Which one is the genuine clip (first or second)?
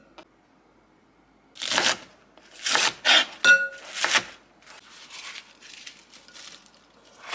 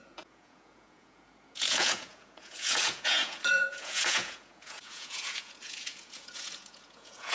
first